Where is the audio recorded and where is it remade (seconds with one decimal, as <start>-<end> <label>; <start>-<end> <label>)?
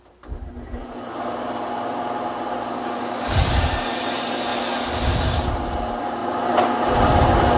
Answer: 0.0-0.8 remade; 0.8-3.3 recorded; 3.3-4.5 remade; 4.5-5.1 recorded; 5.1-7.6 remade